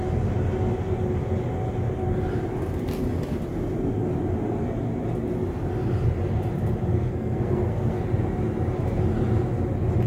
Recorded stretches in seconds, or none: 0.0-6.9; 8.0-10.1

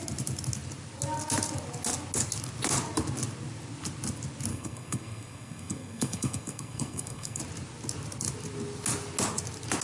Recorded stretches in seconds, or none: 0.0-4.5; 7.4-9.8

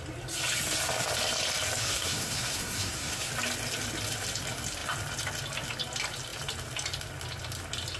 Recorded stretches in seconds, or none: 0.0-1.8; 3.3-8.0

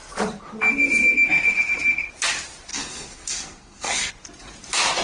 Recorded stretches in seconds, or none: 0.0-2.7; 4.1-5.0

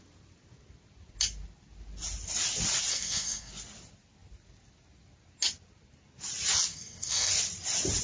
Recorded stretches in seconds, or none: 0.0-2.9; 3.5-6.7; 7.3-8.0

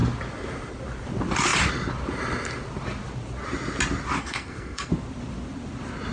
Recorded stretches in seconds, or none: 0.0-4.2; 4.9-6.1

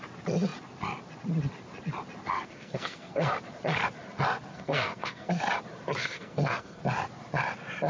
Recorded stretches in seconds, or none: 0.0-2.3; 3.3-4.5; 5.3-6.0; 6.8-7.9

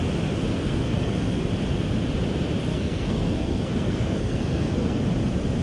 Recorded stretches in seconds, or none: 0.0-0.5; 1.5-2.7; 5.0-5.6